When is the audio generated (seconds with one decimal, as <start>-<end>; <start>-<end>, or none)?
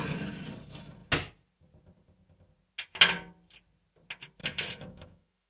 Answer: 4.4-5.5